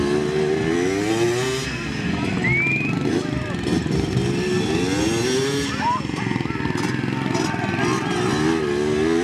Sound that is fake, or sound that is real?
real